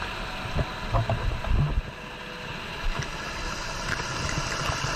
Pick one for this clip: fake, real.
real